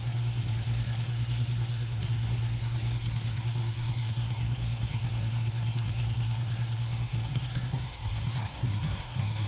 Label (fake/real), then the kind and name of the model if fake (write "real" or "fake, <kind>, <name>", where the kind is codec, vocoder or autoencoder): fake, codec, SNAC